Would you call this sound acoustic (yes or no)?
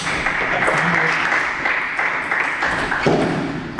yes